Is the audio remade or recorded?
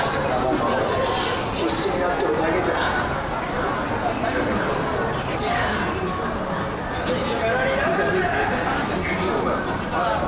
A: recorded